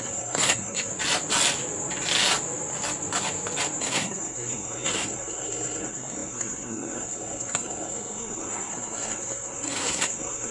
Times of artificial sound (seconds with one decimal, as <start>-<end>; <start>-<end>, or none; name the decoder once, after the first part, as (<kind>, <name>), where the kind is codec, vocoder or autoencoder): 0.0-0.9 (codec, SNAC); 3.8-10.5